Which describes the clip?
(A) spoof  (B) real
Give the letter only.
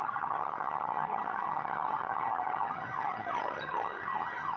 A